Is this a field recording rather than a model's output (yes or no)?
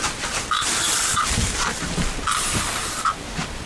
no